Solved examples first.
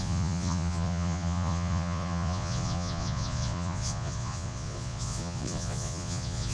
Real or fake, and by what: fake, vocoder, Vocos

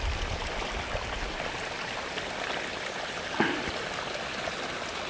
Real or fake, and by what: real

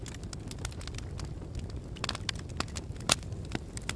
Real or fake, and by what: real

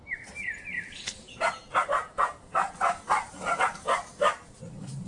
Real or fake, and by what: real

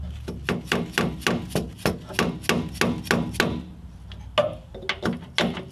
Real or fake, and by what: real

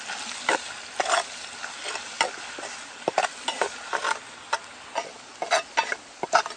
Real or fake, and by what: real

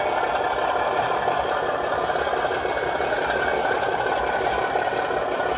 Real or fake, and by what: real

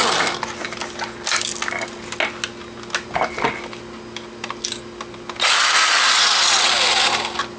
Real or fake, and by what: real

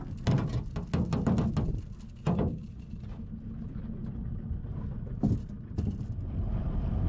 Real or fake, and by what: real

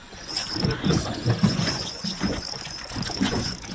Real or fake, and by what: fake, vocoder, Vocos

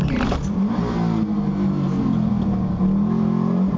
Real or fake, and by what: real